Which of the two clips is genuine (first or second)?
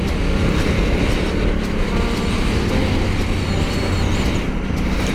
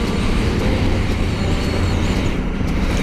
first